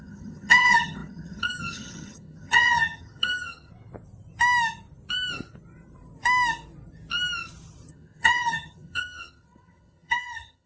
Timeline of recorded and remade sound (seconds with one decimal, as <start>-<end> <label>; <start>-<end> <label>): 0.0-3.7 remade; 3.7-7.9 recorded; 7.9-10.7 remade